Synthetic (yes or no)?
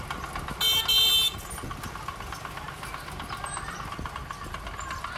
no